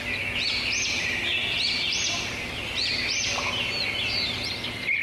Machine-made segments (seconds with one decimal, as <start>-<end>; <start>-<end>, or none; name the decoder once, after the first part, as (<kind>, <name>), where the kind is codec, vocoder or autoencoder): none